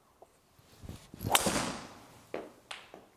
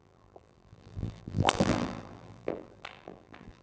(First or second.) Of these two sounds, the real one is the first